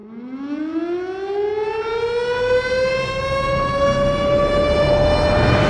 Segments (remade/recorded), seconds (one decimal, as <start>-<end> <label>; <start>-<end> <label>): 0.0-5.7 recorded